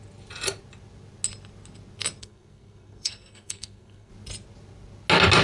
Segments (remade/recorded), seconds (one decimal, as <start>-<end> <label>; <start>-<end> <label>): 0.0-2.2 recorded; 2.2-4.1 remade; 4.1-5.4 recorded